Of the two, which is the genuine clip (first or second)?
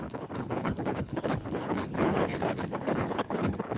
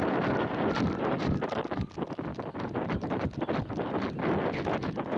second